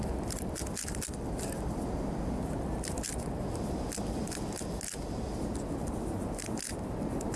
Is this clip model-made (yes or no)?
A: no